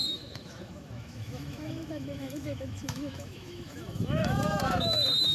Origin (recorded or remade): remade